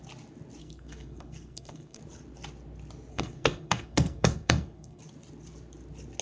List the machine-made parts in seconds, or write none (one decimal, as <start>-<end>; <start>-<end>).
0.6-2.0; 3.1-5.0